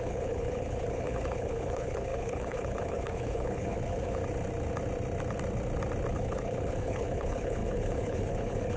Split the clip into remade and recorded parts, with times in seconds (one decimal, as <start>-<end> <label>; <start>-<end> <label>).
0.0-4.2 remade; 4.2-6.1 recorded; 6.1-8.8 remade